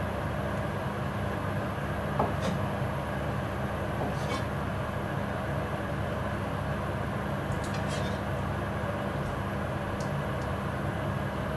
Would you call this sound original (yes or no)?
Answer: yes